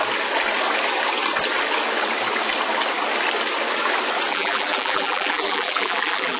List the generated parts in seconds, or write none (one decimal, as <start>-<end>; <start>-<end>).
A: 4.3-6.4